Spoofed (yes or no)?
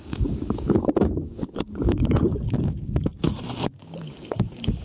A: yes